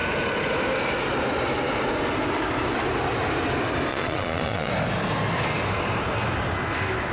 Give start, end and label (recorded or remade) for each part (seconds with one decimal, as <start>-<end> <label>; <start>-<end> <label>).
0.0-3.9 recorded; 3.9-4.7 remade; 4.7-7.1 recorded